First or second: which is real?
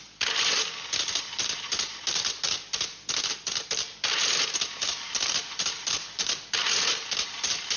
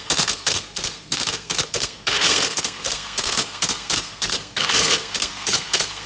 first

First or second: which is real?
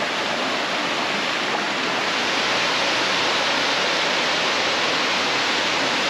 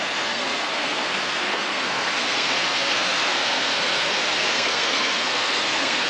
first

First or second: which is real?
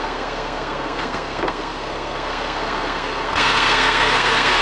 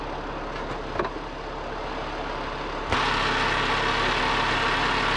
second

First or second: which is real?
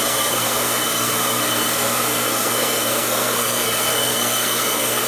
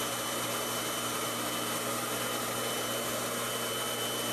second